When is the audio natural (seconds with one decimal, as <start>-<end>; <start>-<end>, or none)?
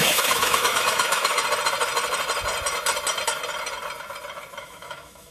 1.4-4.6